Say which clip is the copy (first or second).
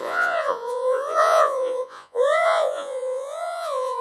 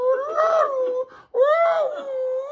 first